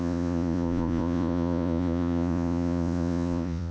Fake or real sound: fake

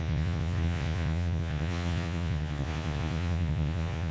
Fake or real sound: fake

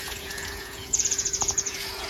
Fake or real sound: fake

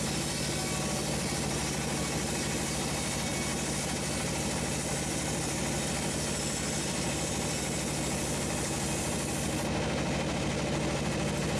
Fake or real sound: real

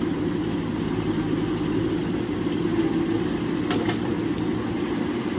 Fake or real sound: real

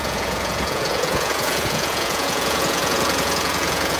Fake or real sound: fake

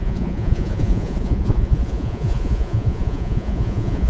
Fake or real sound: fake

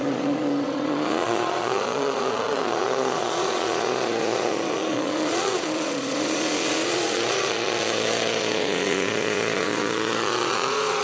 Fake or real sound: fake